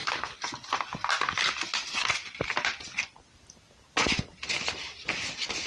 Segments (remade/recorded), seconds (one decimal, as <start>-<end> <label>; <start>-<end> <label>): 0.0-5.7 recorded